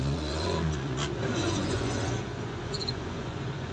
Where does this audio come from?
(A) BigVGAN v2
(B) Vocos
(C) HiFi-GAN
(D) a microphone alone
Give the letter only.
B